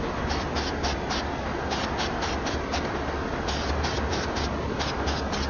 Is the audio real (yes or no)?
yes